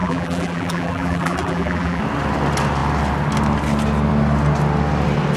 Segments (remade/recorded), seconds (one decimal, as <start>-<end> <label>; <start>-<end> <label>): 0.0-2.0 remade; 2.0-5.4 recorded